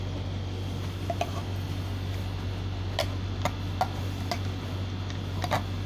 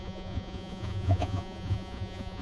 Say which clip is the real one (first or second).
first